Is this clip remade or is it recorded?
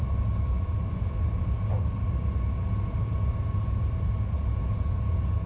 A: recorded